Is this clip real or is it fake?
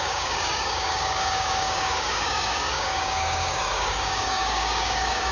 fake